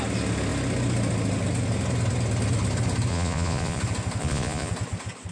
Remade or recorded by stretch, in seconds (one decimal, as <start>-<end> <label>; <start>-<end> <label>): 0.0-3.1 recorded; 3.1-3.8 remade; 3.8-4.2 recorded; 4.2-4.7 remade; 4.7-5.3 recorded